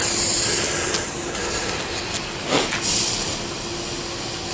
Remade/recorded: recorded